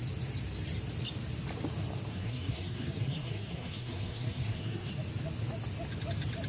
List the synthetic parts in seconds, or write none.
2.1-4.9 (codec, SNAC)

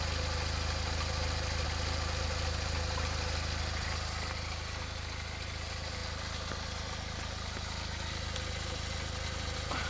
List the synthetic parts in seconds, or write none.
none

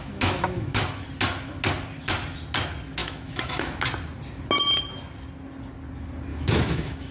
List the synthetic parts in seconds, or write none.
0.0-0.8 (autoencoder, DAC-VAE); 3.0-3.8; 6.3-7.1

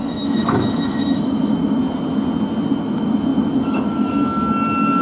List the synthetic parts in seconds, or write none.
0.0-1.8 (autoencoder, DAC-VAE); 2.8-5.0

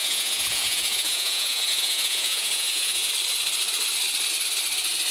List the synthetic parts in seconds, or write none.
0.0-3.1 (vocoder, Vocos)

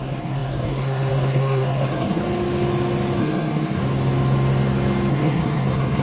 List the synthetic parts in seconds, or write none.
0.0-2.2 (codec, SNAC); 3.2-3.8; 5.1-6.0